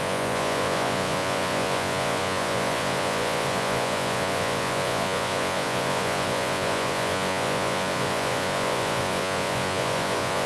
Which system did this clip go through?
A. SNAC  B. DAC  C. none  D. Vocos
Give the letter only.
D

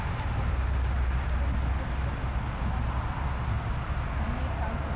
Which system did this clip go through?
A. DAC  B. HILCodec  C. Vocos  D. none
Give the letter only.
D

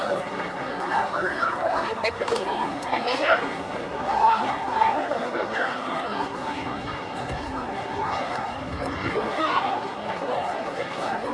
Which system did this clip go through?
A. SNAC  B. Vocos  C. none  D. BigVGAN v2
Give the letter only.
A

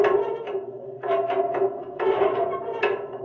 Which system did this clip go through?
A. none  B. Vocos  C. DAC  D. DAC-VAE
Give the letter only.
A